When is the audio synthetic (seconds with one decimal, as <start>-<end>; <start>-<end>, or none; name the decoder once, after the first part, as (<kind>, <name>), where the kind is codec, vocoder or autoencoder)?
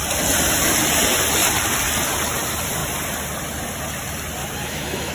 4.4-5.1 (autoencoder, DAC-VAE)